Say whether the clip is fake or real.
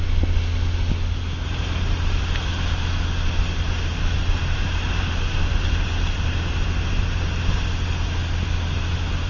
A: real